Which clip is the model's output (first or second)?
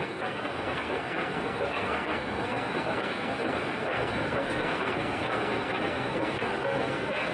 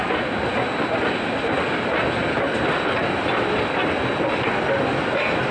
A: first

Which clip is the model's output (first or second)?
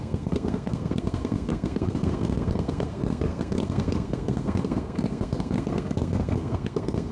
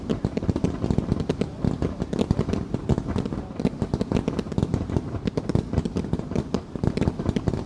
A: first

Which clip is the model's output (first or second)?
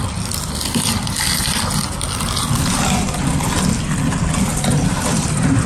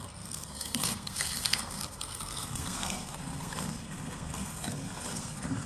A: second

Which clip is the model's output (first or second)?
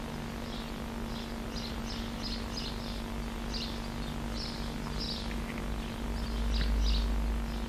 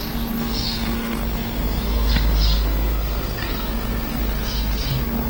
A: second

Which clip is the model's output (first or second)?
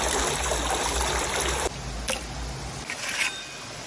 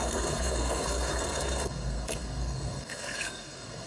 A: second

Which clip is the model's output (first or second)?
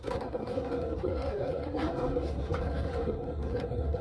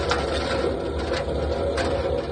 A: first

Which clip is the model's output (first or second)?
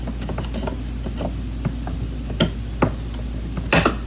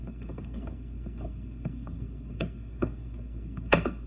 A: second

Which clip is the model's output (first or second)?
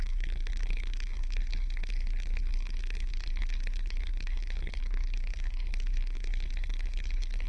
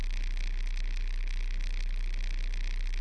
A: first